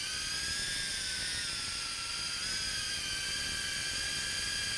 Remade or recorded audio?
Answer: recorded